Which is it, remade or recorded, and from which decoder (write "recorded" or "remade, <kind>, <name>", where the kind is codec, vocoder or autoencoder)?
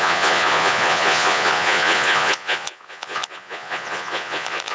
remade, vocoder, Vocos